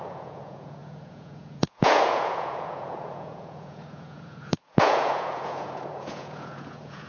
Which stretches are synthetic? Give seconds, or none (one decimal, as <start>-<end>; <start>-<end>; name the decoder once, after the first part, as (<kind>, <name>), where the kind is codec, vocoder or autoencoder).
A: 0.0-7.1 (vocoder, Vocos)